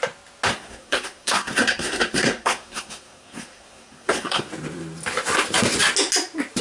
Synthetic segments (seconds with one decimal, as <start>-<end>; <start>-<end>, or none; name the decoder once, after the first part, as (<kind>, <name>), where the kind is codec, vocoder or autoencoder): 0.5-4.5 (codec, SNAC)